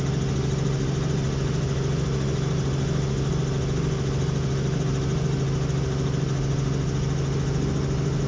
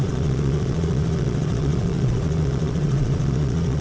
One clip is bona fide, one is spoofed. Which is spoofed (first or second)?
second